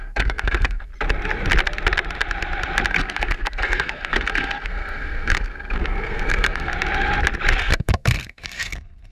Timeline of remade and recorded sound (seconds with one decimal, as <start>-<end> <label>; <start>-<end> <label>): 0.0-0.9 remade; 0.9-2.9 recorded; 2.9-6.7 remade; 6.7-7.6 recorded; 7.6-9.1 remade